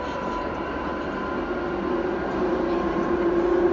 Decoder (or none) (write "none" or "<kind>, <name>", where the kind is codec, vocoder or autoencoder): none